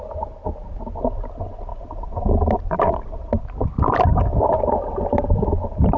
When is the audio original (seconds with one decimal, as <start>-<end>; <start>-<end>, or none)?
0.0-1.7; 3.4-4.1; 4.6-6.0